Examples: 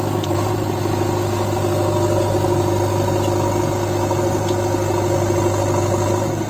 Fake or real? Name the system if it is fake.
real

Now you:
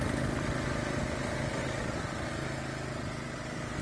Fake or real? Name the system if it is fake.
real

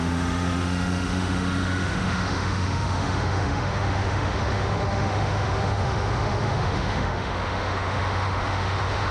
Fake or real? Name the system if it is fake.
fake, autoencoder, DAC-VAE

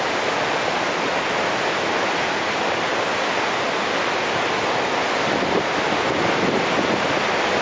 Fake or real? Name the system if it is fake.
real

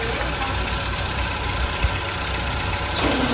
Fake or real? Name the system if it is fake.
real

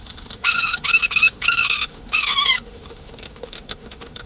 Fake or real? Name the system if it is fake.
fake, autoencoder, DAC-VAE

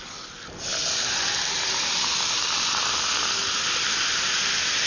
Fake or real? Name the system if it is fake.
real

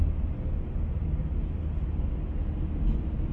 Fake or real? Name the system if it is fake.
real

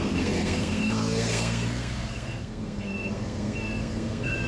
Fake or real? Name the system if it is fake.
fake, codec, SNAC